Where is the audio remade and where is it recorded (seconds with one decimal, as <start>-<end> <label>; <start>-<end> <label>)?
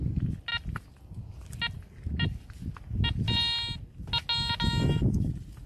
0.0-4.8 recorded; 4.8-5.3 remade; 5.3-5.7 recorded